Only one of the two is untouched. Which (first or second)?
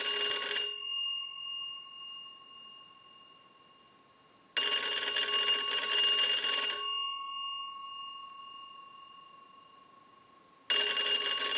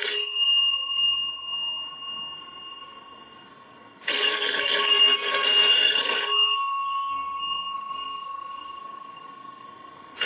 first